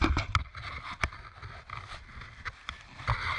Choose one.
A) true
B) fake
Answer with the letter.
A